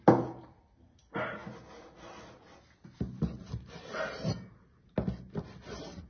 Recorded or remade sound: recorded